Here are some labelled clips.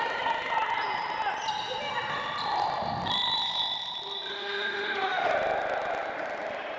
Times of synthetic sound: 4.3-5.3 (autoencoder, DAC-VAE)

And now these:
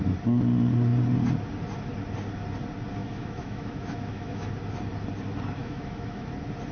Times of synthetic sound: 3.0-4.5 (autoencoder, DAC-VAE); 5.6-6.3